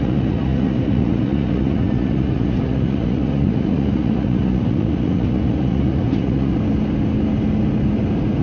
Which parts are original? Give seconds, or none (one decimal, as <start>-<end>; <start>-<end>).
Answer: 6.5-8.4